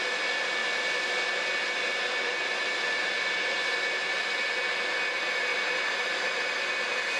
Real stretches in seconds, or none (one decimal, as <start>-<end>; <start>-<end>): 0.0-5.5; 6.7-7.2